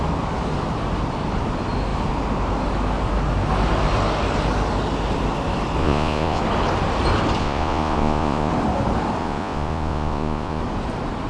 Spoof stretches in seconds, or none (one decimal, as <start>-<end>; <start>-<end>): 5.8-6.4; 7.4-8.5; 9.2-10.6